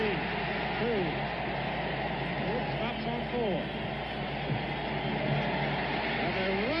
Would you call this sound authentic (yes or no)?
yes